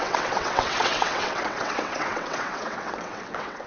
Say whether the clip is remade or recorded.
remade